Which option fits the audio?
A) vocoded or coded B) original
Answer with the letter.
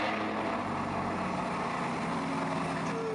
B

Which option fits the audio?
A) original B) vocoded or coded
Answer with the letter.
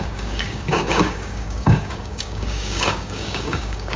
B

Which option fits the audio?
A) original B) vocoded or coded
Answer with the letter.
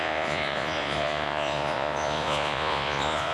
B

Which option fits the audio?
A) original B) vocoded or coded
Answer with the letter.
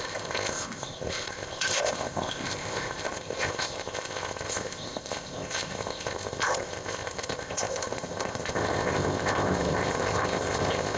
B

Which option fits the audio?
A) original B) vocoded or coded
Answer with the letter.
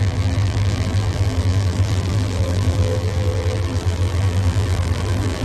B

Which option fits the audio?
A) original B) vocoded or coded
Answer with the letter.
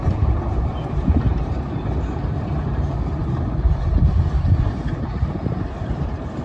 B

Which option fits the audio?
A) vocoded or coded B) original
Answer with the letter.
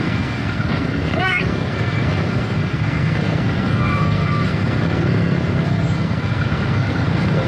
A